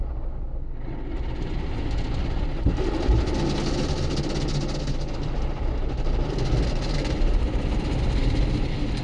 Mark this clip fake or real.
real